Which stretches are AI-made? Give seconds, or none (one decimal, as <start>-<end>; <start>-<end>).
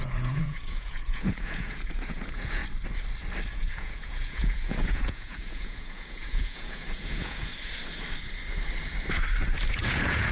0.0-2.6; 3.5-7.5; 9.8-10.3